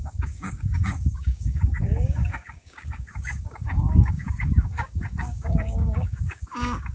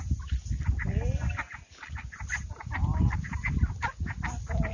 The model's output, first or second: first